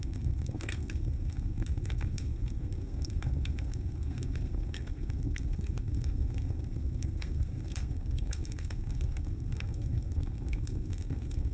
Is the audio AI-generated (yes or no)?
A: yes